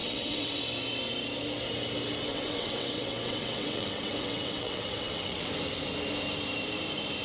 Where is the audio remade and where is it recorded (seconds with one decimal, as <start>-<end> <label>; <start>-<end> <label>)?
0.0-0.6 remade; 0.6-2.3 recorded; 2.3-5.5 remade; 5.5-7.2 recorded

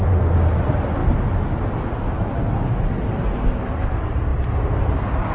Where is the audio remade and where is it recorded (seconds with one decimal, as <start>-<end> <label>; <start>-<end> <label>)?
0.0-5.3 recorded

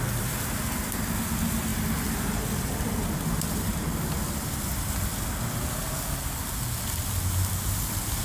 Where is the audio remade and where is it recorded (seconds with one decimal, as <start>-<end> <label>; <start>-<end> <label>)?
0.0-1.7 remade; 1.7-2.8 recorded; 2.8-3.7 remade; 3.7-8.2 recorded